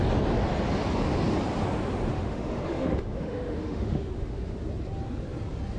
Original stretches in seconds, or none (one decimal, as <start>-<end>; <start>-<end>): 0.0-2.1; 4.6-5.8

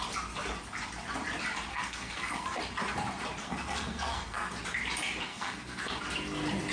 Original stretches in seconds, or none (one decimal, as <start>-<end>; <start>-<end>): 0.0-1.7; 2.6-3.4; 4.5-5.3; 6.0-6.7

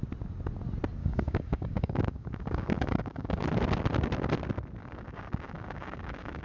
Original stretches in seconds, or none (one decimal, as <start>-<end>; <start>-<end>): 0.0-1.0; 3.4-4.8